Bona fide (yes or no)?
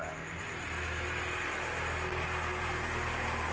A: yes